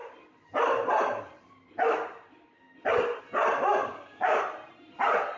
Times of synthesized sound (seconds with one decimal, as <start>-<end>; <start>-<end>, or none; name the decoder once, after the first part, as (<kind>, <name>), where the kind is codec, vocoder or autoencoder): 3.9-4.4 (codec, DAC)